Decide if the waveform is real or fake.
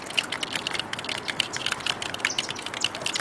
real